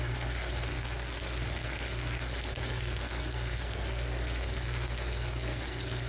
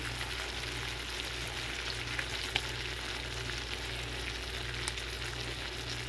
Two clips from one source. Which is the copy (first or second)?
first